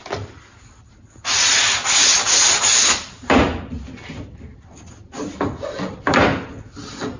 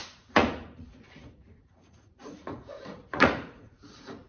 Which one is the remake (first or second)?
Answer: second